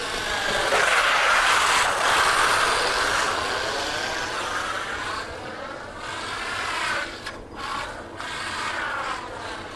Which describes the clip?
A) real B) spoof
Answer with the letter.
A